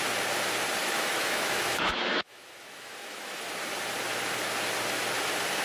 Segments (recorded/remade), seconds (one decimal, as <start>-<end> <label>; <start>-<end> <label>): 0.0-0.8 recorded; 0.8-3.5 remade; 3.5-5.6 recorded